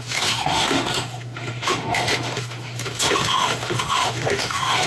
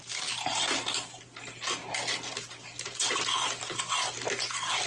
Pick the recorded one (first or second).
second